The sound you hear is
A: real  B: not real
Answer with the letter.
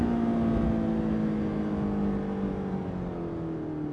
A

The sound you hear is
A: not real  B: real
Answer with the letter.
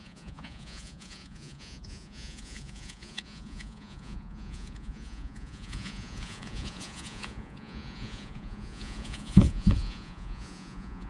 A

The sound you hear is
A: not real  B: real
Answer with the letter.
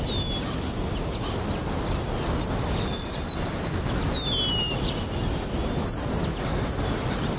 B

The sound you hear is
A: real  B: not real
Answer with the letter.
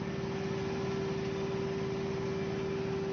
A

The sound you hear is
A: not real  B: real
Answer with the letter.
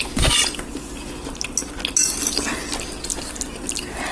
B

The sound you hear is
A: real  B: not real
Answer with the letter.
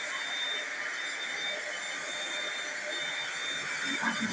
A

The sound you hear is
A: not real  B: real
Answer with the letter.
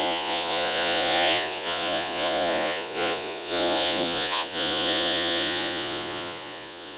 A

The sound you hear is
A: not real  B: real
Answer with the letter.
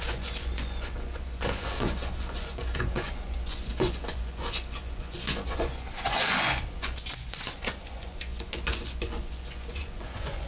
A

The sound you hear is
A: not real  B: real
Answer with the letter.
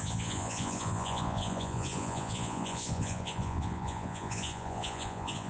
A